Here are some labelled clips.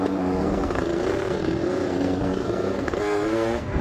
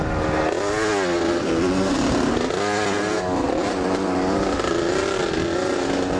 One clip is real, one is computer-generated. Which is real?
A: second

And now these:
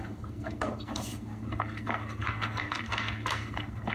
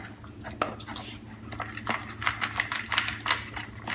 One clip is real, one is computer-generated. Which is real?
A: second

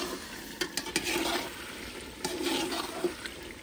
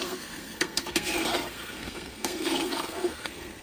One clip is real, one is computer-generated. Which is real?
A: first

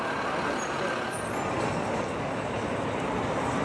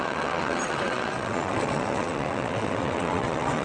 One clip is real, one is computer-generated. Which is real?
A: first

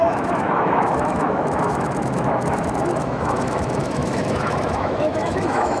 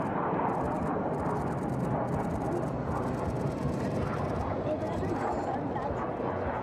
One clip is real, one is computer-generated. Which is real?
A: second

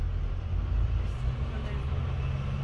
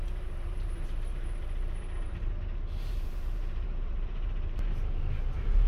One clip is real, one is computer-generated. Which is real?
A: first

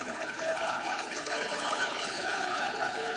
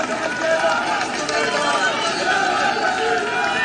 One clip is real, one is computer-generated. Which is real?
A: second